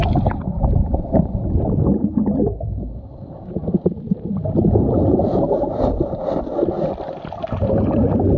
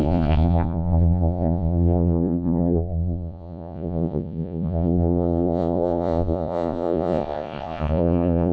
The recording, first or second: first